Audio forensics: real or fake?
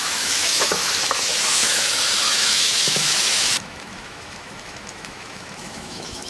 fake